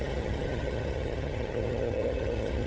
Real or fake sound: fake